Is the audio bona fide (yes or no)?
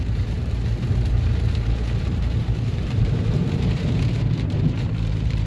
no